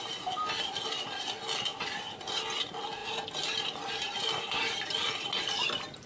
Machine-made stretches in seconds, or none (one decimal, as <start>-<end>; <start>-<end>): 1.7-2.3; 3.0-6.1